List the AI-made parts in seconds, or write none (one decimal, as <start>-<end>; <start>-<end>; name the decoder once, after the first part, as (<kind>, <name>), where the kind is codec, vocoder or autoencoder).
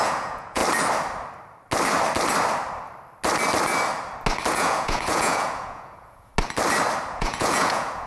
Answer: 0.0-0.6 (vocoder, Vocos); 4.5-6.3; 7.1-8.1